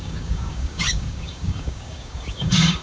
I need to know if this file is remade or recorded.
remade